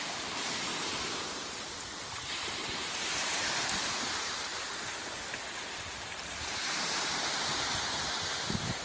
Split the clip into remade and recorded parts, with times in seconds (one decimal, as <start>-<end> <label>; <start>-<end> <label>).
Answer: 0.0-0.7 remade; 0.7-1.2 recorded; 1.2-8.8 remade